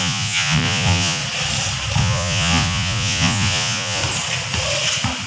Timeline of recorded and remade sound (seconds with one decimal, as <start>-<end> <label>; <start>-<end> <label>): 0.0-1.2 remade; 1.2-2.0 recorded; 2.0-4.0 remade; 4.0-5.3 recorded